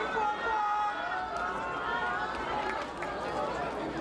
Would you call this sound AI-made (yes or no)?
no